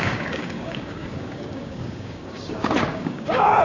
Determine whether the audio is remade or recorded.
remade